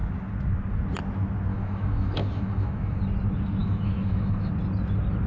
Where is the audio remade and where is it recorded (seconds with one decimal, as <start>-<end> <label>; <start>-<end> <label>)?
0.0-1.5 recorded; 1.5-3.0 remade; 3.0-3.6 recorded; 3.6-4.5 remade; 4.5-5.3 recorded